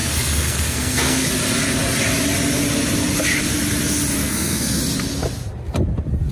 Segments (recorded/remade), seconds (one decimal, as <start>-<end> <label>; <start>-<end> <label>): 0.0-1.3 remade; 1.3-4.2 recorded; 4.2-4.8 remade; 4.8-6.3 recorded